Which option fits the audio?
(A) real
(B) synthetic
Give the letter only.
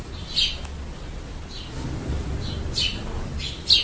A